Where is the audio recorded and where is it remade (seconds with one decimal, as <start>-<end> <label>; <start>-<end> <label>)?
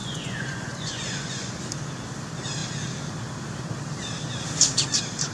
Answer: 0.0-1.5 remade; 1.5-5.3 recorded